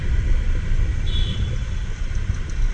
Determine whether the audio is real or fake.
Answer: real